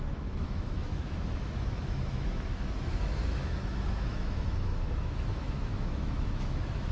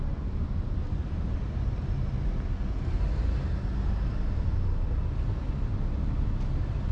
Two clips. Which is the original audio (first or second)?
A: second